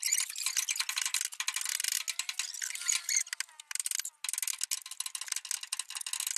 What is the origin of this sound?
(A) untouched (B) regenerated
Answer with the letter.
A